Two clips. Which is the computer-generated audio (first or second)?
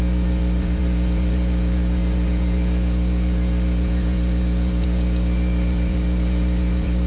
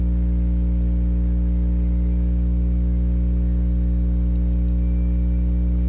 first